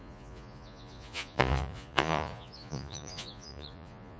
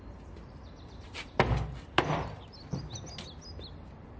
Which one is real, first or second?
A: second